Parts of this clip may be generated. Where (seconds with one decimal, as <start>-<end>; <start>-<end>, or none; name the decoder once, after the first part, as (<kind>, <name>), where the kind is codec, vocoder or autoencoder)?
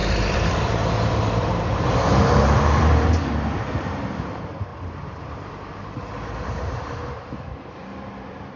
0.0-8.6 (vocoder, BigVGAN v2)